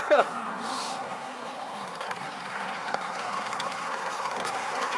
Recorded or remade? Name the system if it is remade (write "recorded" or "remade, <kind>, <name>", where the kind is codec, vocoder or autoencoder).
remade, codec, SNAC